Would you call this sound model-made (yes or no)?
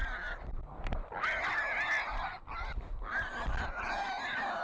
no